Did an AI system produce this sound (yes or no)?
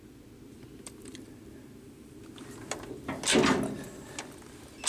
no